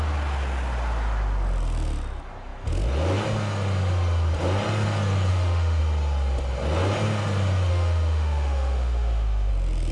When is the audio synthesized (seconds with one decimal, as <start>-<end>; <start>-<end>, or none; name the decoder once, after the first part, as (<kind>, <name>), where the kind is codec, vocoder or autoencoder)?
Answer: 5.3-5.8 (autoencoder, DAC-VAE); 7.7-9.5